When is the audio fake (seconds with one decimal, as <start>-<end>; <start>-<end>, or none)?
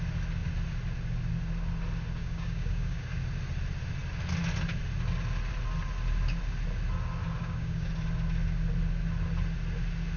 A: 2.2-3.2; 7.4-7.9